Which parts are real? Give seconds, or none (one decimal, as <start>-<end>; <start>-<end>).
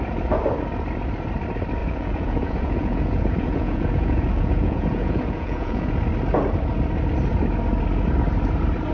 0.0-1.8; 6.0-8.9